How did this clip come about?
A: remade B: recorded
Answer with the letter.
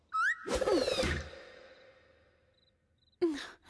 B